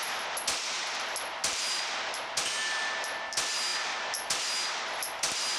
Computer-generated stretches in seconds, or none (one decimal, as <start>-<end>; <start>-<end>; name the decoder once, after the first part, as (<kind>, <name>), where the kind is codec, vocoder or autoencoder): none